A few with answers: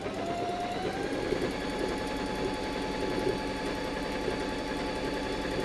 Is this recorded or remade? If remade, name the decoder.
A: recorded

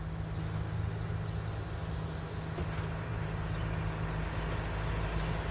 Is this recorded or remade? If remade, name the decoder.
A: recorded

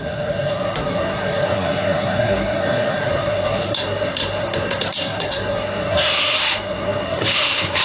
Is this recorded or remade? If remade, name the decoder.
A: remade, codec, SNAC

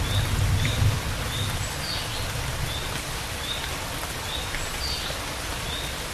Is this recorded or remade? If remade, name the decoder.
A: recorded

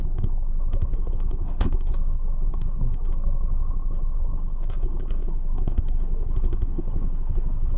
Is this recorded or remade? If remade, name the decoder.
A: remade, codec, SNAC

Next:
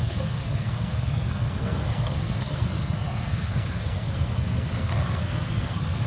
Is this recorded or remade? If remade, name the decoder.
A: remade, codec, SNAC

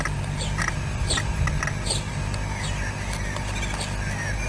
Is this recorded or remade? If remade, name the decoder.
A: recorded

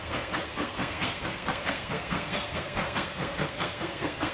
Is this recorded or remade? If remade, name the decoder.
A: remade, codec, SNAC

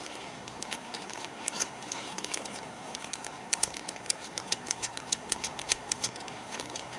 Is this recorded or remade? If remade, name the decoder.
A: remade, codec, SNAC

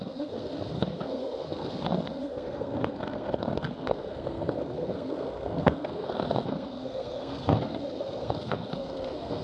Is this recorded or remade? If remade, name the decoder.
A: remade, codec, SNAC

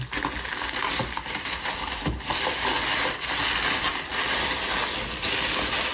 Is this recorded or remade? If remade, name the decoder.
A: recorded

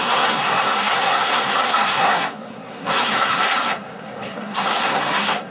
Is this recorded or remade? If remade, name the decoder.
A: remade, codec, SNAC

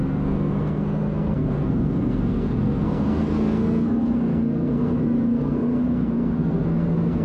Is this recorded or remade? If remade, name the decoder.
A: remade, codec, SNAC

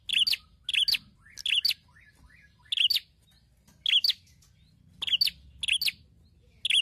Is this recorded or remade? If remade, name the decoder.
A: recorded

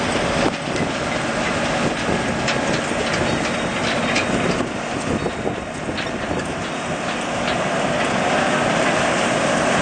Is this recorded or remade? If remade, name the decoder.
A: recorded